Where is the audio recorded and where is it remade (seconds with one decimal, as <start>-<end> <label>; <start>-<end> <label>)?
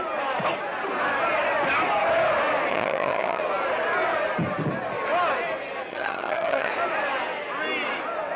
0.0-2.7 recorded; 2.7-3.4 remade; 3.4-5.9 recorded; 5.9-6.7 remade; 6.7-8.4 recorded